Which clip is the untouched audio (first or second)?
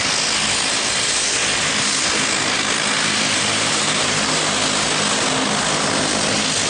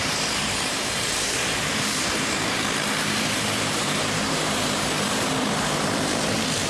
first